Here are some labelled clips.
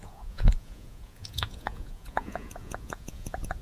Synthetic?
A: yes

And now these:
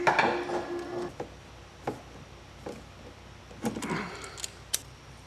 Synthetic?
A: no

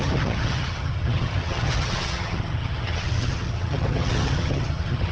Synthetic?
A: yes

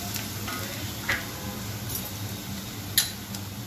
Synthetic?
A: no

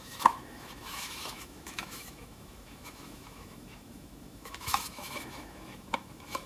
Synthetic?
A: yes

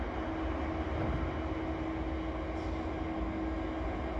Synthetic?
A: no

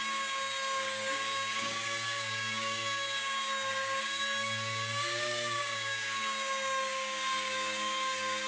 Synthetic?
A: yes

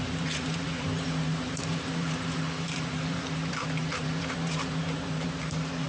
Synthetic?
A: yes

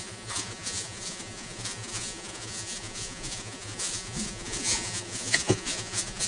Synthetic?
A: yes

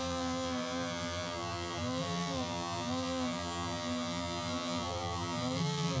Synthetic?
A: yes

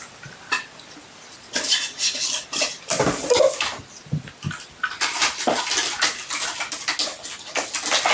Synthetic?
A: no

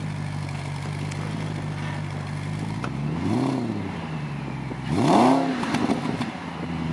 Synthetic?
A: no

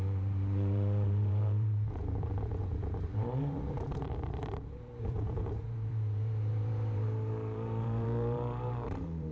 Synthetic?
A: yes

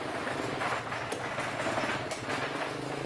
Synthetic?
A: no